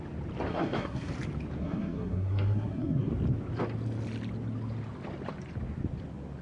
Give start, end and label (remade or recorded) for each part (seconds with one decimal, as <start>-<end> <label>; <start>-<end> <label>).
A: 0.0-0.5 recorded; 0.5-1.1 remade; 1.1-1.6 recorded; 1.6-3.1 remade; 3.1-6.4 recorded